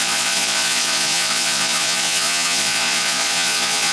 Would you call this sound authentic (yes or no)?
no